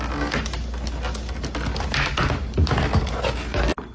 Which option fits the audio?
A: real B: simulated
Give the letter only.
A